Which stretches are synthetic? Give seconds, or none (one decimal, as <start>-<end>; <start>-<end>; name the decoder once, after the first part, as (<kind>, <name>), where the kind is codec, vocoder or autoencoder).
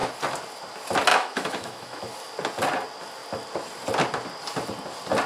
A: 1.1-2.0 (autoencoder, DAC-VAE)